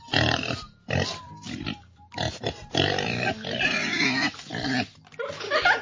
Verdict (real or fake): real